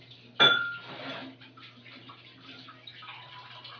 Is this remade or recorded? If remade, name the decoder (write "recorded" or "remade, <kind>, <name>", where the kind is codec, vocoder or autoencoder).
recorded